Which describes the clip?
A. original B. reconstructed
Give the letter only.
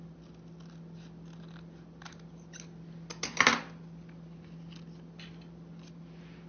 A